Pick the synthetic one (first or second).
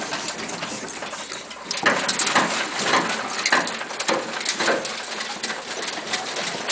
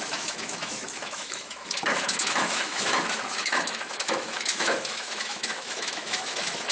second